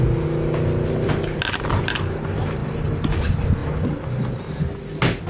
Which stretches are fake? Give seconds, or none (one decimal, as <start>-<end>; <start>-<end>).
2.6-3.2